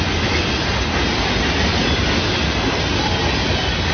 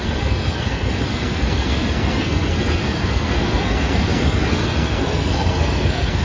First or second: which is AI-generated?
second